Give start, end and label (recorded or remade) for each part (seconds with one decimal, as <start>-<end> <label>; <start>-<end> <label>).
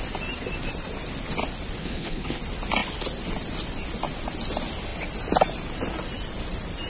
0.0-1.8 recorded; 1.8-2.4 remade; 2.4-6.9 recorded